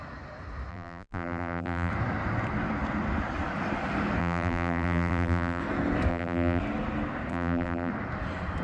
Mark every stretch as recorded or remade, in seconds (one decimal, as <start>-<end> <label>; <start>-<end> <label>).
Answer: 0.0-0.7 recorded; 0.7-1.9 remade; 1.9-4.2 recorded; 4.2-5.6 remade; 5.6-6.1 recorded; 6.1-6.6 remade; 6.6-7.3 recorded; 7.3-7.9 remade; 7.9-8.6 recorded